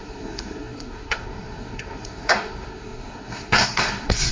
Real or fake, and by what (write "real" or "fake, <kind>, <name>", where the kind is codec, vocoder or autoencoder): fake, codec, SNAC